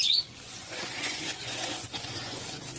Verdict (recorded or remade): remade